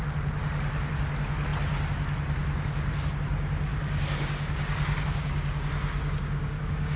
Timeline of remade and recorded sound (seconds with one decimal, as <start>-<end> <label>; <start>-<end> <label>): 0.0-3.7 recorded; 3.7-7.0 remade